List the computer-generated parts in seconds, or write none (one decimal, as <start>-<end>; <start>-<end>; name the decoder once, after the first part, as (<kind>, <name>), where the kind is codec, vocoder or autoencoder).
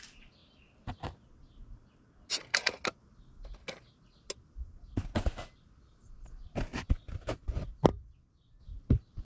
none